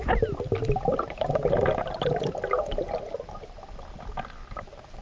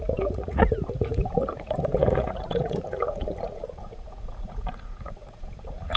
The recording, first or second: first